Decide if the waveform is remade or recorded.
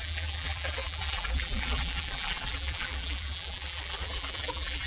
remade